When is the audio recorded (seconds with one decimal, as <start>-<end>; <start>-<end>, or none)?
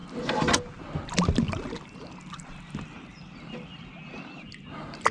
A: 0.0-5.1